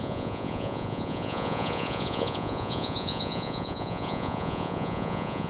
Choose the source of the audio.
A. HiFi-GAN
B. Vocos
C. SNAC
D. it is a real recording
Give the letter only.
B